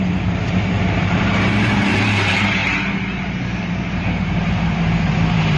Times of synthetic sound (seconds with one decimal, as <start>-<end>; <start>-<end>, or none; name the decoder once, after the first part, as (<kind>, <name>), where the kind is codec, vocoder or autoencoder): 0.0-2.6 (vocoder, BigVGAN v2); 3.6-5.6